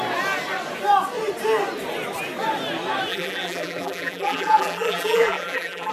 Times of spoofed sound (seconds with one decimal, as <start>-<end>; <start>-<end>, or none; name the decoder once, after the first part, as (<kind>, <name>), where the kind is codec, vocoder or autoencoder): 3.1-5.9 (vocoder, BigVGAN v2)